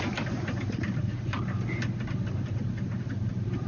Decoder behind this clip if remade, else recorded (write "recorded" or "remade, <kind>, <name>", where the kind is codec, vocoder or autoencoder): recorded